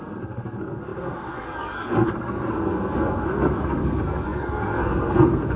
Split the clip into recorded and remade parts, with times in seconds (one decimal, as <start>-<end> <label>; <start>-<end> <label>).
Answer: 0.0-5.6 remade